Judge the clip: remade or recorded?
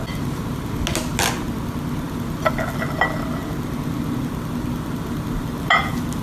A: recorded